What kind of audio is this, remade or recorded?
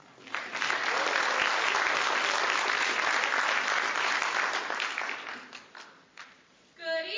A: recorded